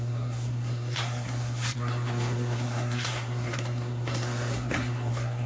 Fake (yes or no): yes